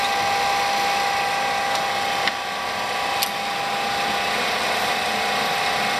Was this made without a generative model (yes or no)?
yes